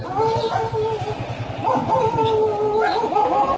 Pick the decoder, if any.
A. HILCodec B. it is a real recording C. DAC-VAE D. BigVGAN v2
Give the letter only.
B